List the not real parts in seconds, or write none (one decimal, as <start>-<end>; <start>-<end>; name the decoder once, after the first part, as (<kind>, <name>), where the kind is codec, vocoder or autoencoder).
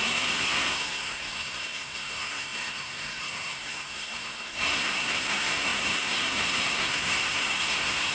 0.0-8.1 (codec, SNAC)